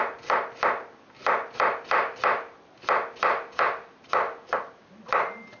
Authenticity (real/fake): real